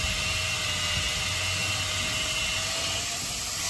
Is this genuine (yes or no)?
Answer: yes